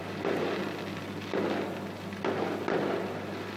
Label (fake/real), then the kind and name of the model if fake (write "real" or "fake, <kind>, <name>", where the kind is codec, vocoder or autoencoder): real